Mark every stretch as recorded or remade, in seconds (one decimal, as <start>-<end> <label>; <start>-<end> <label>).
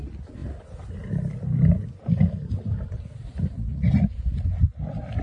0.0-3.7 recorded; 3.7-4.6 remade; 4.6-5.2 recorded